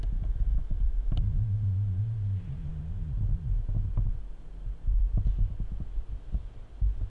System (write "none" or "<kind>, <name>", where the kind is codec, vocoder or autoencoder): none